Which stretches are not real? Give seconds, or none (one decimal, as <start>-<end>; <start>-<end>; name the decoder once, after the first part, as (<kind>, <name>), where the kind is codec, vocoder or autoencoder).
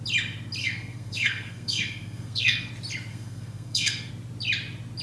0.6-2.7 (codec, SNAC); 3.1-4.1